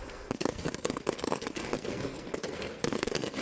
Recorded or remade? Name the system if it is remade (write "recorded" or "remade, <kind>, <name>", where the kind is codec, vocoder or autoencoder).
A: remade, codec, SNAC